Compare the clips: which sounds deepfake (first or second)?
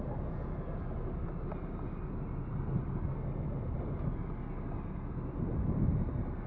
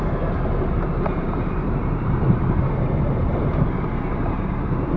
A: second